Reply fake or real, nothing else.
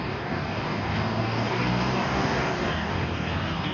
fake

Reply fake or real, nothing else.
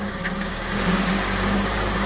fake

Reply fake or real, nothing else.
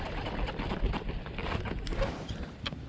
real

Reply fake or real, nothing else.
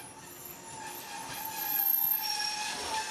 real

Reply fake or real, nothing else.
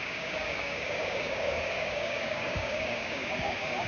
fake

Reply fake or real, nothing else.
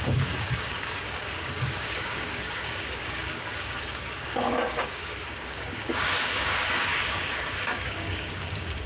fake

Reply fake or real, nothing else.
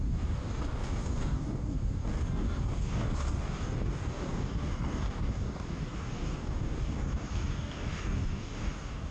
fake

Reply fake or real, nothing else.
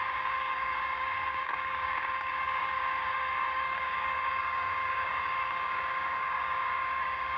fake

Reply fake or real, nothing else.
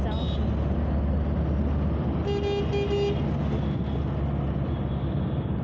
real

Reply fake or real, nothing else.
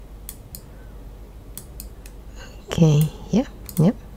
real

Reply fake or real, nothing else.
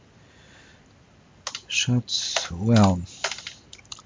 real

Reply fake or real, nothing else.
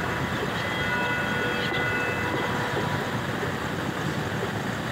real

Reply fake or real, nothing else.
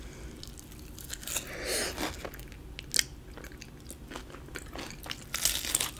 real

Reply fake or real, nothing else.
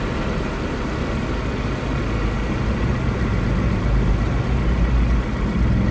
real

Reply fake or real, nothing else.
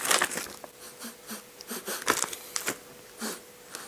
real